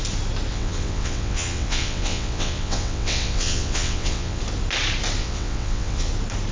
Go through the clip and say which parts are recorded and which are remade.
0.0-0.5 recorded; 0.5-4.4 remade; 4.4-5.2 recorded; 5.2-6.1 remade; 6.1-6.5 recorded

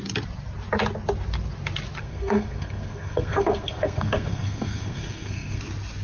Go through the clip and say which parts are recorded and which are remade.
0.0-2.0 recorded; 2.0-5.6 remade; 5.6-6.0 recorded

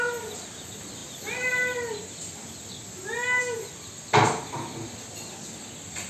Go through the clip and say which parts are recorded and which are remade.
0.0-6.1 recorded

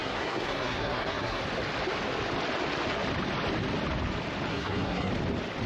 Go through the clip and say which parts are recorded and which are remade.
0.0-1.4 remade; 1.4-4.5 recorded; 4.5-5.1 remade; 5.1-5.7 recorded

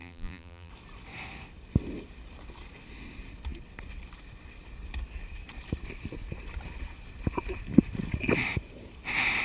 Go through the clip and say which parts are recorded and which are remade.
0.0-0.7 remade; 0.7-9.4 recorded

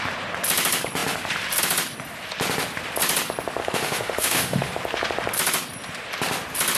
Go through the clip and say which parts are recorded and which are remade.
0.0-3.6 recorded; 3.6-4.7 remade; 4.7-6.8 recorded

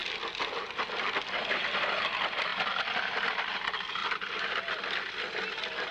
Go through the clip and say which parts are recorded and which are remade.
0.0-4.0 recorded; 4.0-4.9 remade; 4.9-5.9 recorded

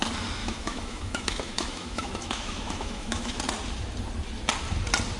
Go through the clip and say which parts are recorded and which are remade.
0.0-0.4 recorded; 0.4-3.4 remade; 3.4-5.2 recorded